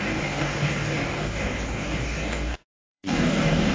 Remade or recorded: remade